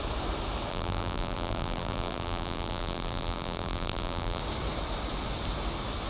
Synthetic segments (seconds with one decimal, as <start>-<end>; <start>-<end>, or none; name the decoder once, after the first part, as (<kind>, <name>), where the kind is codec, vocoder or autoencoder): 0.7-4.4 (vocoder, BigVGAN v2)